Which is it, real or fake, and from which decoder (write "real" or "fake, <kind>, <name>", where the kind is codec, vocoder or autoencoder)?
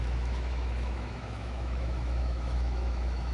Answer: fake, autoencoder, DAC-VAE